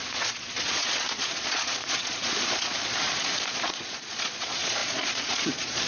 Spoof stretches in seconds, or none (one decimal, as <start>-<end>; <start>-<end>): 0.0-5.9